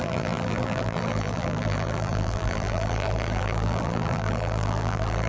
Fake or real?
fake